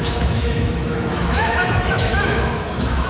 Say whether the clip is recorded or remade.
remade